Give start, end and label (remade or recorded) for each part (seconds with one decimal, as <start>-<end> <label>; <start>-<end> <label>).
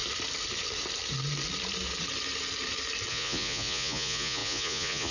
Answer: 0.0-3.1 recorded; 3.1-5.1 remade